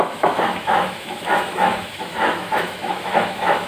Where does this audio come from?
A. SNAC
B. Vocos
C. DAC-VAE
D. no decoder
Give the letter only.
C